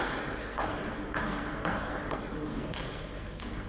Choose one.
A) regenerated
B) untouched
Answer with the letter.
A